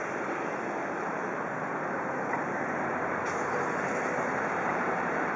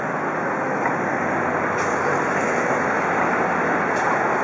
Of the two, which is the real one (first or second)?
second